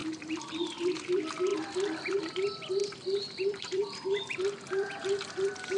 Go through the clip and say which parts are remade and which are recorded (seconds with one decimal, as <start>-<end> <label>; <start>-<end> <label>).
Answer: 0.0-0.8 remade; 0.8-1.5 recorded; 1.5-2.3 remade; 2.3-2.8 recorded; 2.8-5.8 remade